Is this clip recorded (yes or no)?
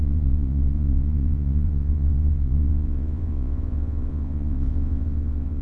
no